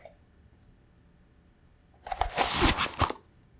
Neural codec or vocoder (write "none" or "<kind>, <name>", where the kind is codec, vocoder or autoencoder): none